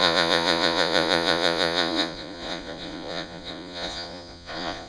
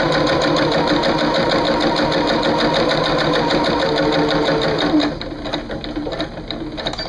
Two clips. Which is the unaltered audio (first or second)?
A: second